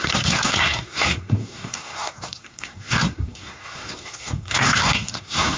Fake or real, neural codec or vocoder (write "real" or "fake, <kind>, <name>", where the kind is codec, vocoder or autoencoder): fake, codec, SNAC